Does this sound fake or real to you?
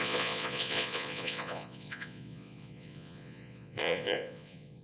fake